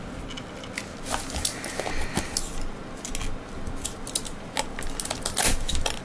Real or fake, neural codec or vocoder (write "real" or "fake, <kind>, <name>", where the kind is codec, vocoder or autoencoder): real